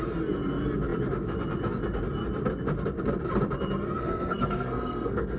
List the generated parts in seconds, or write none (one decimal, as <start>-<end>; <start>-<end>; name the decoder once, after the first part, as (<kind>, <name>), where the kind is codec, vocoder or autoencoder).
4.0-5.4 (codec, SNAC)